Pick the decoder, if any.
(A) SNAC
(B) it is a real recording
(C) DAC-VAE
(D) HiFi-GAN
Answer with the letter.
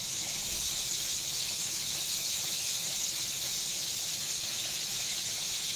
C